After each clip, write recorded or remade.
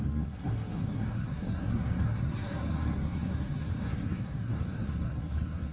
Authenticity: remade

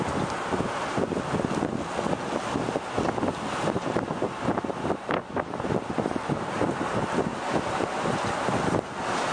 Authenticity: recorded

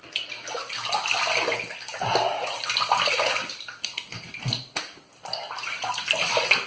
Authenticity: recorded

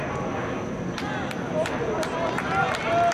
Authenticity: recorded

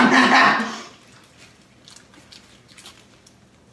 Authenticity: recorded